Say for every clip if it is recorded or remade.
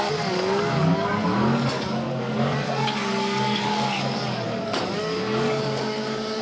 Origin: remade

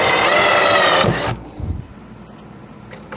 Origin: recorded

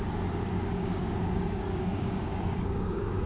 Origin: remade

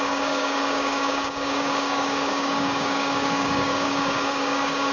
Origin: remade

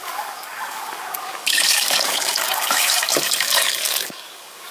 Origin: remade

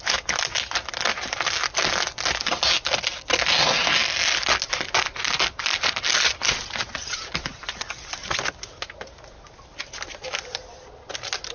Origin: recorded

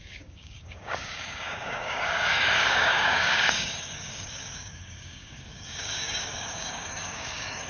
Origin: remade